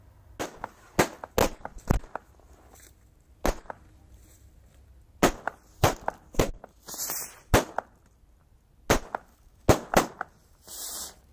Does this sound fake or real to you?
real